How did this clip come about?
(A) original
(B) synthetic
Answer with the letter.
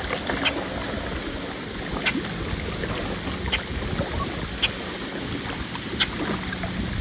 A